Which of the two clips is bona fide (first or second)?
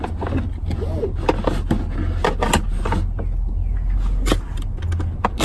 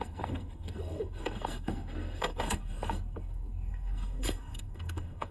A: first